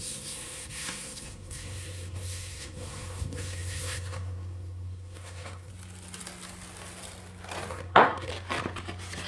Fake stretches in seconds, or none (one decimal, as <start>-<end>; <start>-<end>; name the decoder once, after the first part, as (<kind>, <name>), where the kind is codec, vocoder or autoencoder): 0.0-5.7 (codec, SNAC); 7.7-8.3